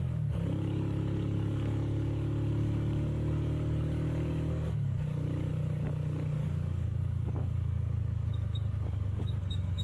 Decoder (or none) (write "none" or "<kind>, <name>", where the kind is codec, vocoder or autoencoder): codec, DAC